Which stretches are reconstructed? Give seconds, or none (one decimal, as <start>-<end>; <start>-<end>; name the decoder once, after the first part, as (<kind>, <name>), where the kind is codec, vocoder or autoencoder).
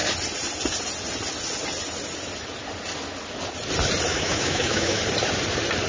4.1-5.0 (autoencoder, DAC-VAE)